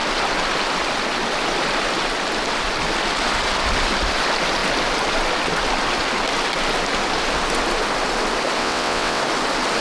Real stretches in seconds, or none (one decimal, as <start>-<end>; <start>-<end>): 0.0-8.6; 9.2-9.8